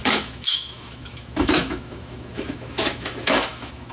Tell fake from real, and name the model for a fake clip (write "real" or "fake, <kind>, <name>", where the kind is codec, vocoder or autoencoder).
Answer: fake, autoencoder, DAC-VAE